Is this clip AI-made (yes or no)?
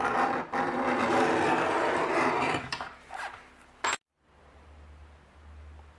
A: no